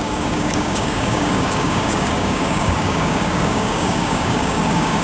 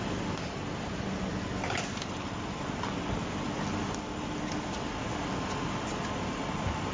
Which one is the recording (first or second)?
second